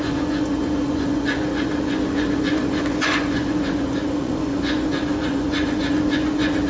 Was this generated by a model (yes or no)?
yes